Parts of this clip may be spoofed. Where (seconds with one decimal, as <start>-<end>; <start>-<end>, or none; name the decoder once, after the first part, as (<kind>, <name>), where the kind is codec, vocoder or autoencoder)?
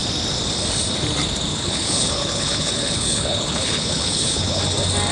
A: 1.5-4.6 (codec, HILCodec)